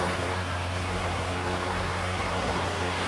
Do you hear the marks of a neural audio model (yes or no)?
yes